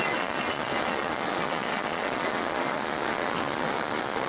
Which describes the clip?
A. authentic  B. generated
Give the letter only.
B